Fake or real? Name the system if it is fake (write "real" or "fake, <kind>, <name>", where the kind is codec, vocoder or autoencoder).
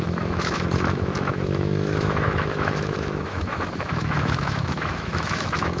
fake, autoencoder, DAC-VAE